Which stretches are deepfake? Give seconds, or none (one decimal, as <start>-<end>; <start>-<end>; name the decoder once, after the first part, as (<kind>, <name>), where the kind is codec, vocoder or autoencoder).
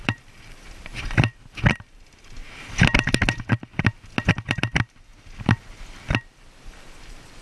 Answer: 0.0-2.4 (vocoder, BigVGAN v2); 4.3-5.1; 6.4-7.4